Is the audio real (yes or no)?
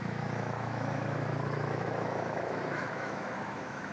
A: no